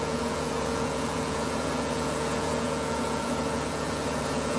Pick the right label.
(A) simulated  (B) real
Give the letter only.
A